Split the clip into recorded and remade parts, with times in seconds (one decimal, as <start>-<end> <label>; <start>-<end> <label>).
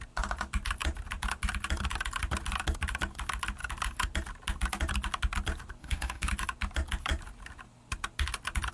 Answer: 0.0-5.8 recorded; 5.8-6.3 remade; 6.3-8.7 recorded